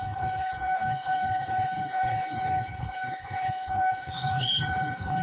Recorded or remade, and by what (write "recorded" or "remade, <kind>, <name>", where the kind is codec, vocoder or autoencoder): remade, codec, HILCodec